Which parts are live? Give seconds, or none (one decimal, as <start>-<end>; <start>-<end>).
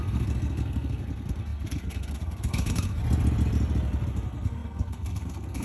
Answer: 3.0-4.1